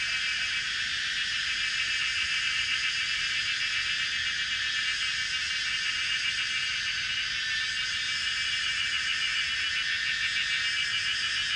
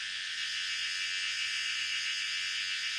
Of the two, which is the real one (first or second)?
first